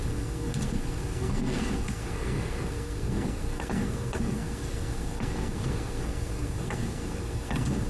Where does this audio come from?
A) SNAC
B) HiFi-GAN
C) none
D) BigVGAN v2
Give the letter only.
A